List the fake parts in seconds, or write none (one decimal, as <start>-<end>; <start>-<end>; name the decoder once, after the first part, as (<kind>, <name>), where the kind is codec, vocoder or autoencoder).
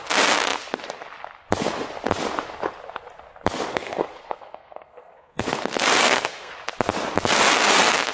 3.7-5.6 (codec, SNAC); 6.0-6.5